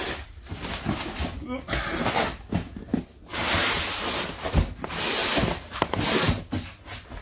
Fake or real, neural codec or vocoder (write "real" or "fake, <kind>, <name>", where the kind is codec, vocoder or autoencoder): real